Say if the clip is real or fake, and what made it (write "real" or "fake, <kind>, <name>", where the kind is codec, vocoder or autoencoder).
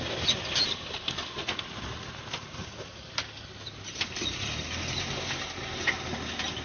real